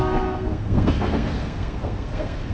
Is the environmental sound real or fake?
fake